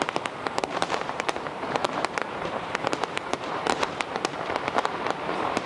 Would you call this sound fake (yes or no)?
yes